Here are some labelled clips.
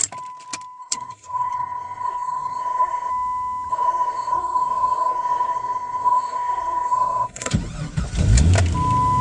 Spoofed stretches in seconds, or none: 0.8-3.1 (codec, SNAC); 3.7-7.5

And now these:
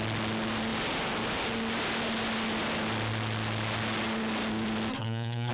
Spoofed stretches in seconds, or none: 4.9-5.5 (codec, SNAC)

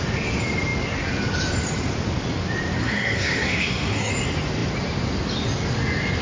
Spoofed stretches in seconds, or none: 2.8-4.1 (codec, SNAC)

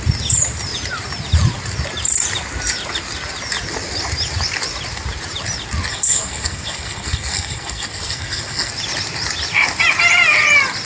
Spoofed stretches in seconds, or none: 5.9-8.7 (codec, SNAC)

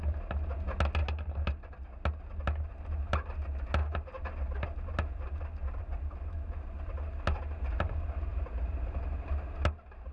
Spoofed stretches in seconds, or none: none

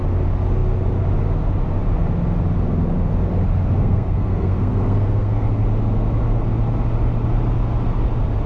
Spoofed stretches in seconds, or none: 3.8-5.5 (codec, SNAC)

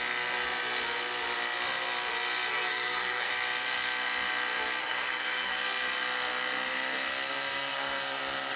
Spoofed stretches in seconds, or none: 2.5-3.3 (codec, SNAC); 4.8-5.6